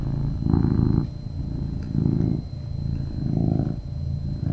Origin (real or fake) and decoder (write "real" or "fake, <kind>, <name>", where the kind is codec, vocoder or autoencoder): real